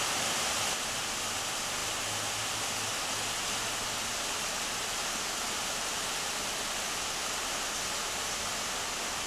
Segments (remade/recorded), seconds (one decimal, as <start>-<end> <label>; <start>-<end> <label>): 0.0-1.8 remade; 1.8-4.0 recorded; 4.0-9.3 remade

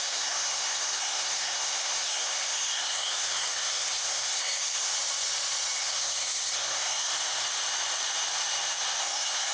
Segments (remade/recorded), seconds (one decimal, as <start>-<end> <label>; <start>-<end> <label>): 0.0-4.9 remade; 4.9-5.8 recorded; 5.8-7.1 remade; 7.1-9.0 recorded; 9.0-9.5 remade

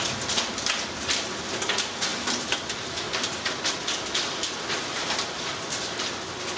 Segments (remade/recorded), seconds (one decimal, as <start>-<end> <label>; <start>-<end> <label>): 0.0-6.6 recorded

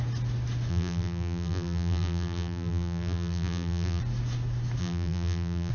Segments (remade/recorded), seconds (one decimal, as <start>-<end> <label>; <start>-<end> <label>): 0.0-0.7 recorded; 0.7-4.0 remade; 4.0-4.8 recorded; 4.8-5.7 remade

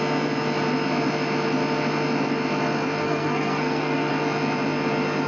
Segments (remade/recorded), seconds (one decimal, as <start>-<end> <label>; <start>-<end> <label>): 0.0-3.0 recorded; 3.0-4.1 remade; 4.1-5.3 recorded

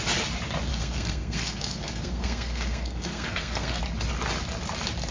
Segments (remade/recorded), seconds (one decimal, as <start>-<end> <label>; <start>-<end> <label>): 0.0-0.7 recorded; 0.7-3.8 remade; 3.8-5.1 recorded